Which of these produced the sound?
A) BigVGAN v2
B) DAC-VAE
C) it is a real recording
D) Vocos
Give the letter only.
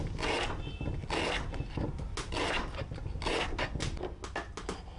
C